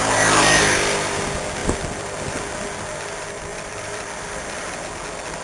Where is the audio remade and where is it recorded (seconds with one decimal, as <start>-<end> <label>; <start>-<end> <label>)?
0.0-1.6 recorded; 1.6-2.4 remade; 2.4-3.5 recorded; 3.5-4.8 remade; 4.8-5.4 recorded